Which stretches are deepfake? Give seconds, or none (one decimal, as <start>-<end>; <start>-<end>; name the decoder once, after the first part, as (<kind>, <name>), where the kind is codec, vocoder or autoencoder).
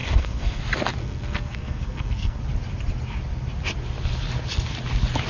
0.0-0.6 (codec, SNAC); 1.0-2.4